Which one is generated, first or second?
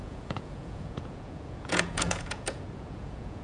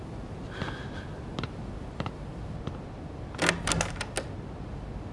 first